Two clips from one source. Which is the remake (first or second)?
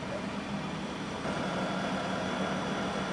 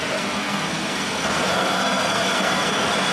second